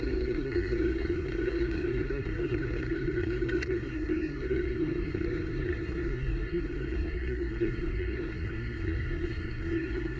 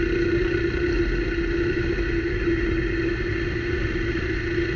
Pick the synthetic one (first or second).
first